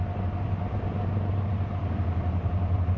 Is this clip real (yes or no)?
yes